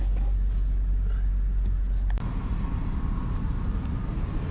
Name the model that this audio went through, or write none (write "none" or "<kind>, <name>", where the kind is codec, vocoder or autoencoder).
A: none